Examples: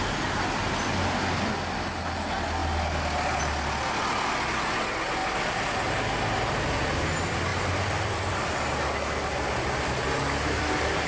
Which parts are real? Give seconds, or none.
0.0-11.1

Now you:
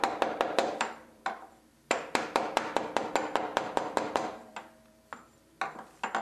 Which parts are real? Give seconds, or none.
0.0-0.6; 3.1-3.5; 5.1-6.2

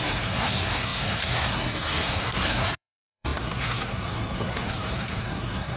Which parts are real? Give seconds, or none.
none